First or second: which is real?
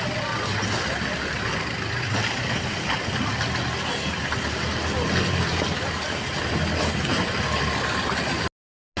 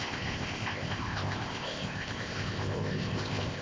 first